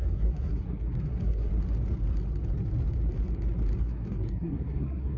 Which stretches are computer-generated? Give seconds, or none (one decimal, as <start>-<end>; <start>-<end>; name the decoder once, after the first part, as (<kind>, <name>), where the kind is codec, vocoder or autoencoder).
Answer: 0.0-1.5 (codec, SNAC); 3.8-5.2